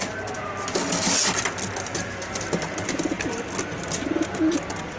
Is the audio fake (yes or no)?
no